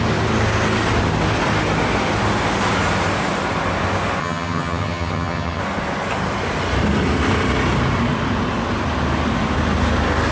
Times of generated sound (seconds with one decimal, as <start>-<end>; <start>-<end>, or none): 4.2-5.6